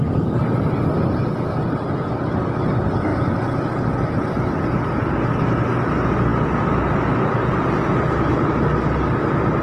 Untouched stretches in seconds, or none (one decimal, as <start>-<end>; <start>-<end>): 0.0-9.6